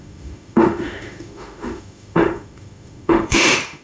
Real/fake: fake